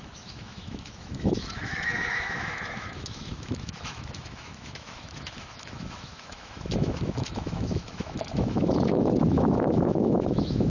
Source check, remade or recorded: remade